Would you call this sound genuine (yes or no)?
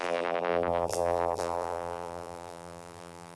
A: no